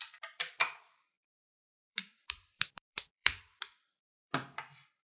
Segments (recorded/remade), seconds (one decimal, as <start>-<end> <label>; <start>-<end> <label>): 0.0-5.1 remade